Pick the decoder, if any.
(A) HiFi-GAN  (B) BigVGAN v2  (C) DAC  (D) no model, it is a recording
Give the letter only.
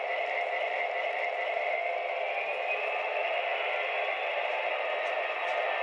D